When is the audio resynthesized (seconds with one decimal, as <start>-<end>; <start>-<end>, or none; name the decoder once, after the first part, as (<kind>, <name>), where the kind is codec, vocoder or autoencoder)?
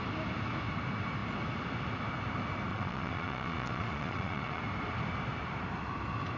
2.7-4.6 (vocoder, Vocos)